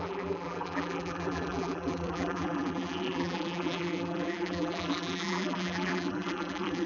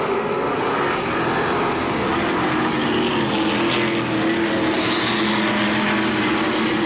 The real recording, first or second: second